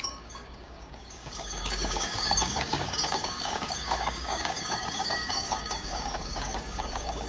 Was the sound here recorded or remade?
remade